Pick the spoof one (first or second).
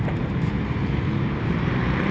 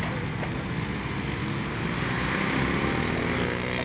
first